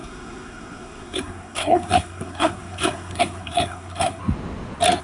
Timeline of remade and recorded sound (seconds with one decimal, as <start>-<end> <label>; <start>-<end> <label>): 0.0-4.2 remade; 4.2-5.0 recorded